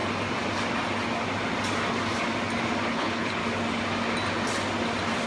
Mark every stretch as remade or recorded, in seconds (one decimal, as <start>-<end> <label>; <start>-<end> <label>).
0.0-2.9 recorded; 2.9-3.4 remade; 3.4-5.3 recorded